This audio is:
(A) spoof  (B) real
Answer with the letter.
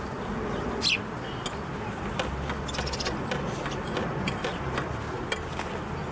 B